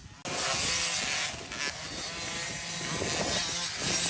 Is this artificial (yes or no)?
no